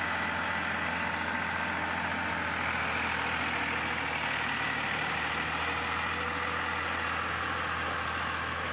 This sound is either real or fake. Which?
real